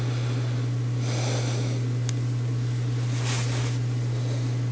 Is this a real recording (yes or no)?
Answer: yes